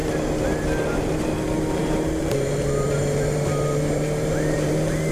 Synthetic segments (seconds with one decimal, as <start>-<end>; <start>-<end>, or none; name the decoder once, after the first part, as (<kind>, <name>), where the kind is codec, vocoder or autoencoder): 1.8-5.1 (vocoder, BigVGAN v2)